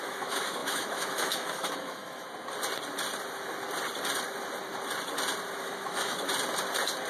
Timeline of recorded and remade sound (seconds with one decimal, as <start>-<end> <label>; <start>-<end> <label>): 0.0-2.2 remade; 2.2-5.6 recorded; 5.6-6.3 remade; 6.3-7.1 recorded